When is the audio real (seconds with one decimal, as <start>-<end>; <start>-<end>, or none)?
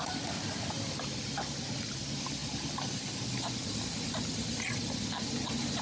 0.0-5.8